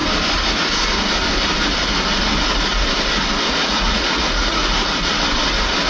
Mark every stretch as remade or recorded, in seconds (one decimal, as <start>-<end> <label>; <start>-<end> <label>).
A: 0.0-3.5 recorded; 3.5-4.6 remade; 4.6-5.9 recorded